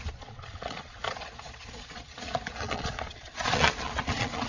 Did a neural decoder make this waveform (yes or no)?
yes